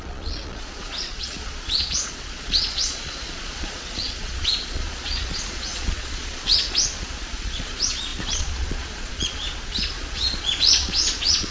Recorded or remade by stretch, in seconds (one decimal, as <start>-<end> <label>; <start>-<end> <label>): 0.0-11.5 remade